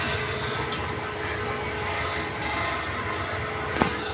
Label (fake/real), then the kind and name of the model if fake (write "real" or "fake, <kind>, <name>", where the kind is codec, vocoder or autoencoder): real